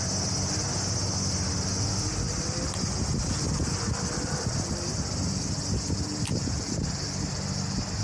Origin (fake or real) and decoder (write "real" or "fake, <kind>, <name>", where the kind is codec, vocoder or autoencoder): real